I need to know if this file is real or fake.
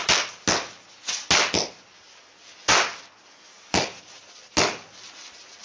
real